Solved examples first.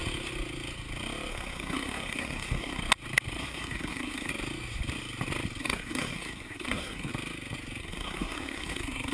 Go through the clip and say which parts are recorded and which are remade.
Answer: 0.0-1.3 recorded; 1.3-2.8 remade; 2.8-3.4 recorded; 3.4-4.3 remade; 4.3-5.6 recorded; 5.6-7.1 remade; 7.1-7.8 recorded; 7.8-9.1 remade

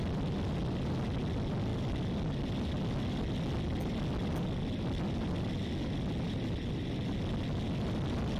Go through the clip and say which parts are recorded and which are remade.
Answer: 0.0-8.4 recorded

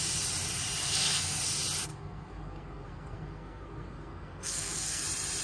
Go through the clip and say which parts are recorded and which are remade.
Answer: 0.0-0.8 recorded; 0.8-1.4 remade; 1.4-1.9 recorded; 1.9-5.0 remade; 5.0-5.4 recorded

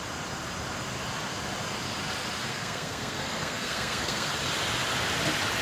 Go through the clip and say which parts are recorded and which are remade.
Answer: 0.0-2.5 recorded; 2.5-4.3 remade; 4.3-5.6 recorded